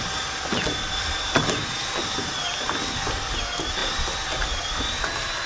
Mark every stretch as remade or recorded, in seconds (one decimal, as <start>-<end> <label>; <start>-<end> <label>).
0.0-5.5 recorded